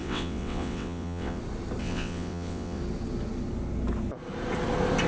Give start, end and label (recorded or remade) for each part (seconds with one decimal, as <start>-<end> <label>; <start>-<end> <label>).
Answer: 0.0-1.4 remade; 1.4-1.8 recorded; 1.8-2.8 remade; 2.8-5.1 recorded